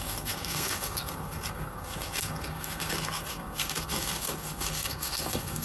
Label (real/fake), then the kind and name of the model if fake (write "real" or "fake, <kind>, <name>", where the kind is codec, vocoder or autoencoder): fake, codec, SNAC